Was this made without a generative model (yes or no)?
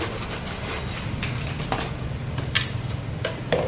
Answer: yes